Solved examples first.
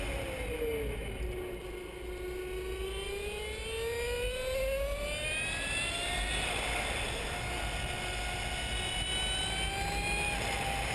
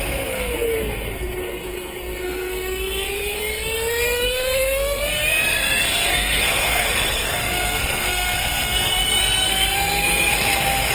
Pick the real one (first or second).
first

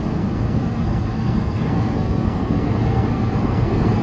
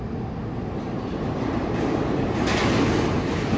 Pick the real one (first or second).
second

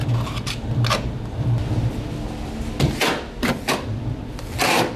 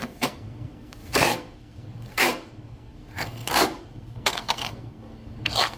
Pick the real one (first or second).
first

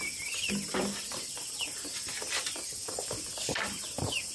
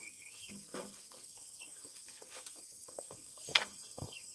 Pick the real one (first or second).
first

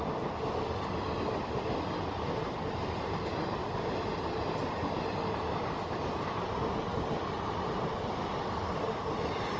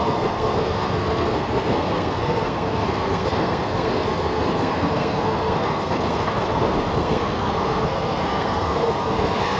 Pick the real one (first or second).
first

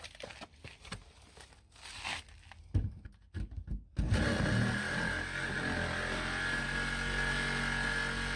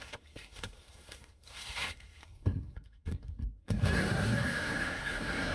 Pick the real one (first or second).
first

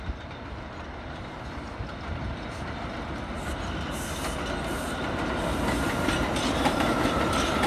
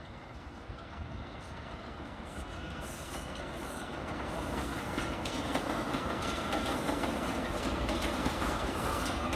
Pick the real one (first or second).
first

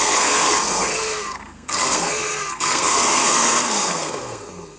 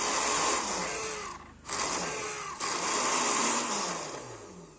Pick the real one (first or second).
second